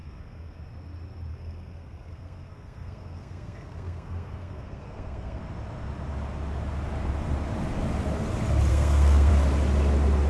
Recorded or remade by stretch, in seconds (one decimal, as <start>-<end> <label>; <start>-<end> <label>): 0.0-0.6 remade; 0.6-1.3 recorded; 1.3-5.4 remade; 5.4-8.7 recorded; 8.7-9.3 remade; 9.3-10.3 recorded

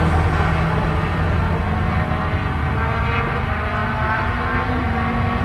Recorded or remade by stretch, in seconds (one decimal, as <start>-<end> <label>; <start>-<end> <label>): 0.0-5.4 recorded

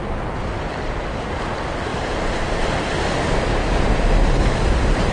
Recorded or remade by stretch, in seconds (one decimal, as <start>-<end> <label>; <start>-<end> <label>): 0.0-5.1 recorded

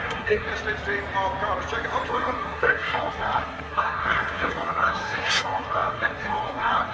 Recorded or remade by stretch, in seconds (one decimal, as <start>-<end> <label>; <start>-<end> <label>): 0.0-0.5 remade; 0.5-2.1 recorded; 2.1-6.9 remade